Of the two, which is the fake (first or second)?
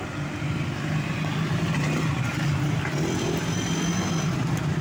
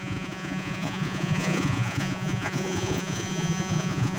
second